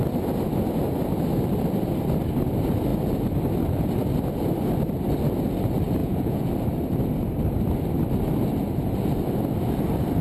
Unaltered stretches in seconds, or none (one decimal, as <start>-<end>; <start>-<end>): 0.0-6.0; 6.5-10.2